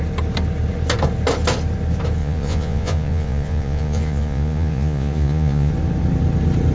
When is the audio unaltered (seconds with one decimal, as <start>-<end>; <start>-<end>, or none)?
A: 0.0-2.2; 5.7-6.7